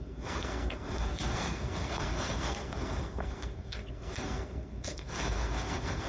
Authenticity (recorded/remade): remade